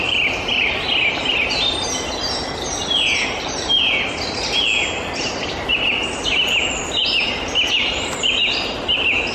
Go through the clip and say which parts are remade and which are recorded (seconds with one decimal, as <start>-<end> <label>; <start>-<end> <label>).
0.0-9.3 recorded